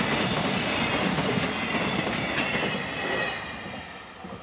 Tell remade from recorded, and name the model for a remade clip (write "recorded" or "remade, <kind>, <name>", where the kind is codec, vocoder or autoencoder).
recorded